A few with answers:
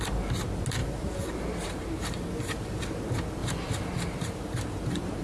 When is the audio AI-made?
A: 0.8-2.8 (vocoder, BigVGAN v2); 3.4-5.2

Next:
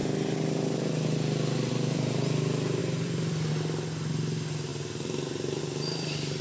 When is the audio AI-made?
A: 1.7-6.4 (vocoder, BigVGAN v2)

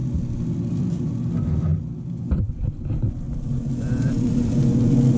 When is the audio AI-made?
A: 0.0-0.9 (vocoder, BigVGAN v2); 1.7-4.7

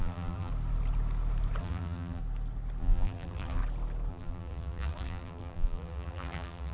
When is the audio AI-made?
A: 0.0-0.5 (vocoder, BigVGAN v2); 1.6-2.2; 2.8-3.6; 4.1-6.7

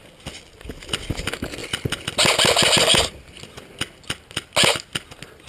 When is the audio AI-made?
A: none

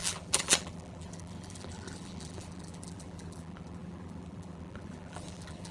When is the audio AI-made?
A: 0.0-5.7 (vocoder, BigVGAN v2)